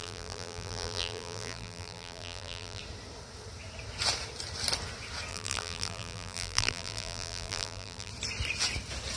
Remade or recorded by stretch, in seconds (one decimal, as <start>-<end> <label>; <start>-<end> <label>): 0.0-2.8 remade; 2.8-5.3 recorded; 5.3-8.1 remade; 8.1-9.2 recorded